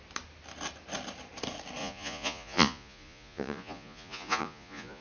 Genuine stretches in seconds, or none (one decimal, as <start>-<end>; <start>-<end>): 0.0-1.8